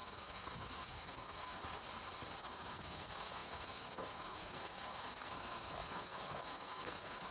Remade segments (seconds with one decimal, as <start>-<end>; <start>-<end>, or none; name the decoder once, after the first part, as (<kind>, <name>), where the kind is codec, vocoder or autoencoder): 0.0-1.6 (codec, SNAC); 2.4-7.3